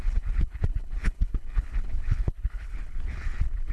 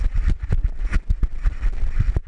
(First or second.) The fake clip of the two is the first